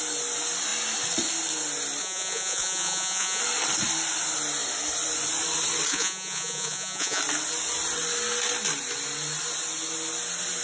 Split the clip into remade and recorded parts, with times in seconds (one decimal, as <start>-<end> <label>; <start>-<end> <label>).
0.0-2.0 recorded; 2.0-3.4 remade; 3.4-5.9 recorded; 5.9-7.2 remade; 7.2-10.6 recorded